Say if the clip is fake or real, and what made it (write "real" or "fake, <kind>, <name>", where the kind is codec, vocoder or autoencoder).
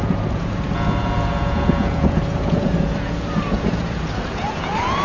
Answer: fake, vocoder, Vocos